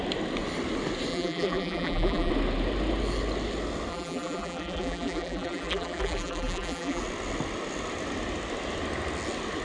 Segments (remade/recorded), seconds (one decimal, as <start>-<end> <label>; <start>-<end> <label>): 0.0-1.1 recorded; 1.1-2.3 remade; 2.3-3.9 recorded; 3.9-7.0 remade; 7.0-9.6 recorded